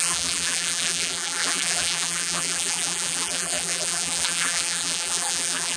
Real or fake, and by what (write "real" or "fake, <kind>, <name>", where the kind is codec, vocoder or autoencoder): fake, vocoder, BigVGAN v2